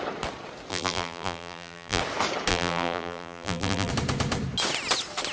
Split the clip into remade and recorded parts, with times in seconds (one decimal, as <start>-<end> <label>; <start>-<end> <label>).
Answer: 0.0-0.7 recorded; 0.7-2.0 remade; 2.0-2.5 recorded; 2.5-3.9 remade; 3.9-5.3 recorded